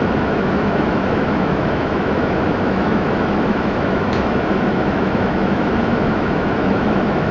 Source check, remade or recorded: remade